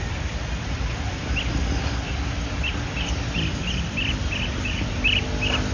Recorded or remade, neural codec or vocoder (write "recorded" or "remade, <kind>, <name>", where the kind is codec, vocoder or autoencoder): recorded